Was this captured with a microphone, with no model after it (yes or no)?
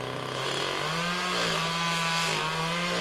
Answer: yes